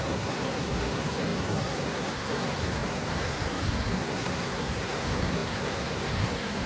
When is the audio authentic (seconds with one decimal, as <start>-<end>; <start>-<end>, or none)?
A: none